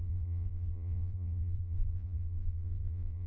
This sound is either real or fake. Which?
fake